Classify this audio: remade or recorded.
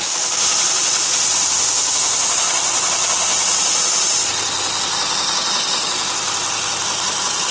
recorded